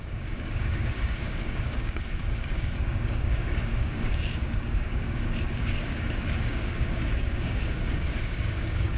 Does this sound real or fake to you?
fake